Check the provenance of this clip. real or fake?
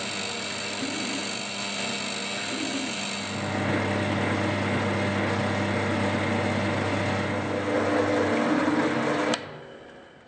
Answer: real